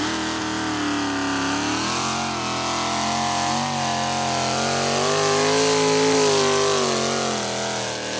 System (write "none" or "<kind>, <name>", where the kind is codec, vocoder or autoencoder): none